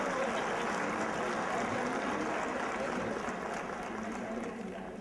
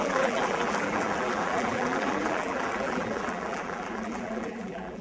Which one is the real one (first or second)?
first